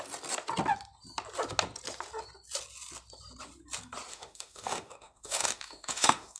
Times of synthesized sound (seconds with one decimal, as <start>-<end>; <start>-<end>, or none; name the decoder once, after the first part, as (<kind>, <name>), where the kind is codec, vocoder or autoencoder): 4.1-6.4 (autoencoder, DAC-VAE)